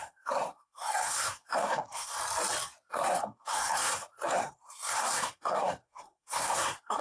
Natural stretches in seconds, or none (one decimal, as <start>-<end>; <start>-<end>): 2.2-2.9